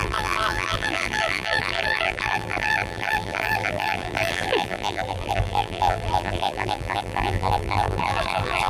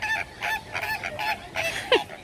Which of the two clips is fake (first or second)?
first